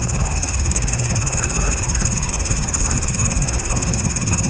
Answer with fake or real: fake